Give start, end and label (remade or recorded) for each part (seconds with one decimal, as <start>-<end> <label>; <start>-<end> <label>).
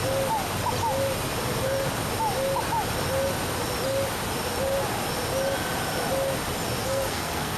0.0-6.8 recorded; 6.8-7.6 remade